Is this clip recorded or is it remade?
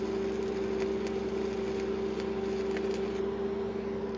recorded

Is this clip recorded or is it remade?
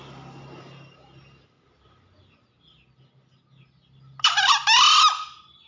recorded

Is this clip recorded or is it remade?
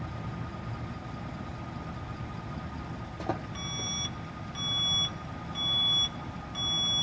recorded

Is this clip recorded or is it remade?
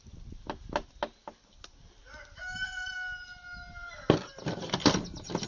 recorded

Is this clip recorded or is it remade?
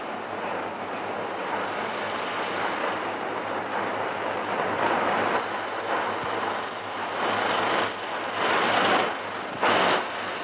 recorded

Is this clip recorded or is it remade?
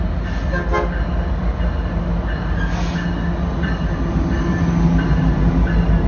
recorded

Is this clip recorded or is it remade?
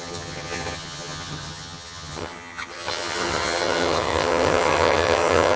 remade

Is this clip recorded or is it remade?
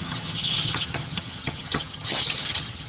remade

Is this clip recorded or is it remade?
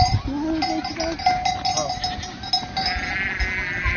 recorded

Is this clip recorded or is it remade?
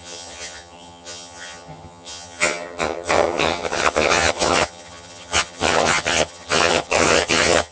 remade